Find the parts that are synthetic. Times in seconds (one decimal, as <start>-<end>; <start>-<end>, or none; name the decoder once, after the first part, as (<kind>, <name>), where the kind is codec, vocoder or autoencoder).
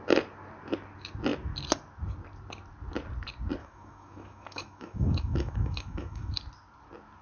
3.6-6.3 (autoencoder, DAC-VAE)